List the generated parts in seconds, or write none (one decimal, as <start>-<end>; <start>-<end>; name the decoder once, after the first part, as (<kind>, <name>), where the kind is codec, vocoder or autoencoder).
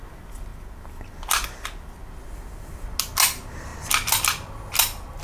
none